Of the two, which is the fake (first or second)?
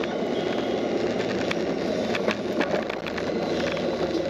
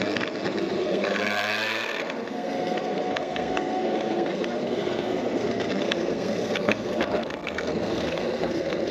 second